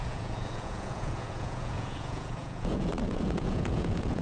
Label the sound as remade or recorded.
remade